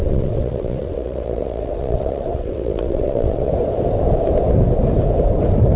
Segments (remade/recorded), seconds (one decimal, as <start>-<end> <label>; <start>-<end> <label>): 0.0-3.5 remade; 3.5-5.8 recorded